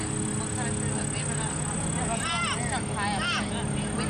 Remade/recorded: recorded